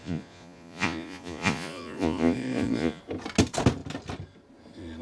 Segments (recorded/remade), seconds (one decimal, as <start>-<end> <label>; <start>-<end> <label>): 0.0-3.0 remade; 3.0-5.0 recorded